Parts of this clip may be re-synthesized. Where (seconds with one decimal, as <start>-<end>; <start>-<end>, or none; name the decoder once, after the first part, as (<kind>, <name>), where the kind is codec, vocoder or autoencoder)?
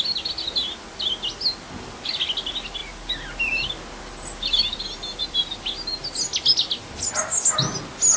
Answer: none